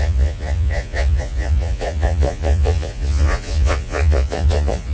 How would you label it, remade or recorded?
remade